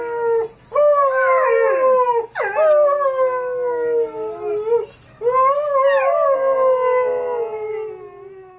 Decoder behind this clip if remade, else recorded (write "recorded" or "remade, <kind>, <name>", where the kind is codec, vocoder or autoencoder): recorded